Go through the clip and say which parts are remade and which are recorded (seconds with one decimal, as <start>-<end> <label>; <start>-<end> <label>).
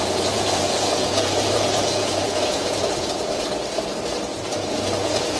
0.0-3.2 remade; 3.2-4.3 recorded; 4.3-5.4 remade